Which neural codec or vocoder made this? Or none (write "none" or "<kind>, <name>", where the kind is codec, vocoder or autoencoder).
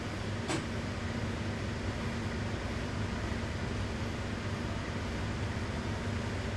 none